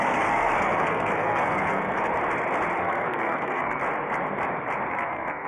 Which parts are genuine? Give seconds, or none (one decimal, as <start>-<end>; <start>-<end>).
2.1-2.8; 3.8-4.9